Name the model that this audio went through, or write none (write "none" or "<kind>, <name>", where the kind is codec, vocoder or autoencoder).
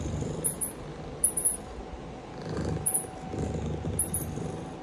none